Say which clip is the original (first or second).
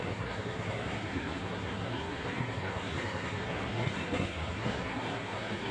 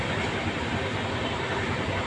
second